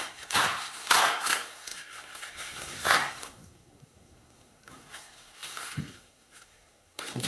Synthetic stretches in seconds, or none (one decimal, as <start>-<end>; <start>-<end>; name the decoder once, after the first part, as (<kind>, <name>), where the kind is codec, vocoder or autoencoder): 0.0-7.3 (codec, SNAC)